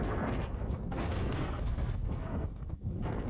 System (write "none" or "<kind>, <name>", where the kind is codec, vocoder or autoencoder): codec, SNAC